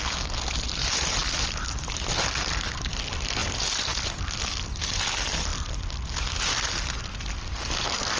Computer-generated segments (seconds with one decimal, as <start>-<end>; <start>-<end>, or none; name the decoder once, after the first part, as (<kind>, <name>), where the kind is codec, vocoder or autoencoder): none